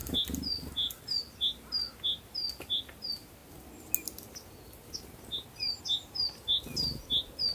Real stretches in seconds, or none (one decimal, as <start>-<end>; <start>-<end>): 0.0-7.5